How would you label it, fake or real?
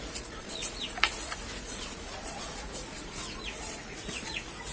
fake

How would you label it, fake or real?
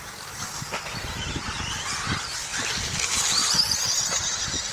real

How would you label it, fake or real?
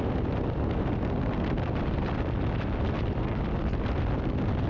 real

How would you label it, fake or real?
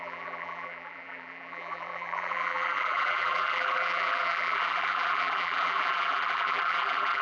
fake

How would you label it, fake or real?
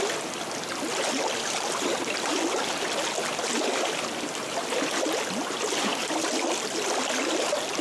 real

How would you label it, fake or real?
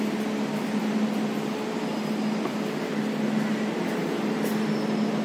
real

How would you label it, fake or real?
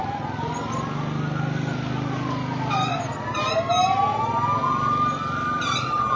real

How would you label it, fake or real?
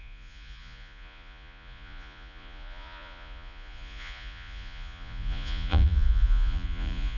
fake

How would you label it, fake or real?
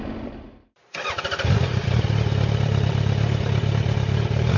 fake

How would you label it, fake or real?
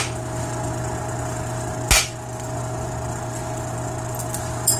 real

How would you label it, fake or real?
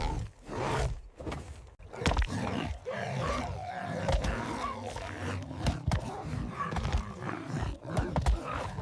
real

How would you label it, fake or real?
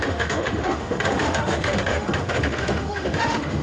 fake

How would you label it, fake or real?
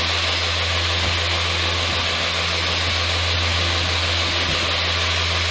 real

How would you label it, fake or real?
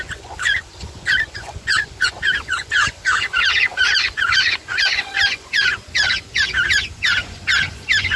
fake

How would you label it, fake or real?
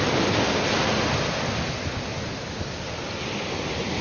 real